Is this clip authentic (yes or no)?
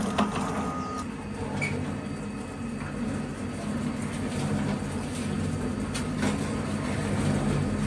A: yes